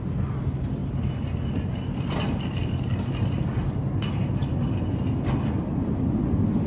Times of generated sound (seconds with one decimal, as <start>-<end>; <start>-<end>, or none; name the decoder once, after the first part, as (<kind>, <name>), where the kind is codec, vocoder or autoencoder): none